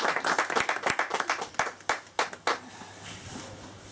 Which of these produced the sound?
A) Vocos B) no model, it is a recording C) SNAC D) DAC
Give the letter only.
B